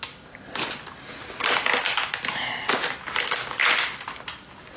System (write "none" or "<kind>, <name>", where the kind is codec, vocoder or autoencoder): none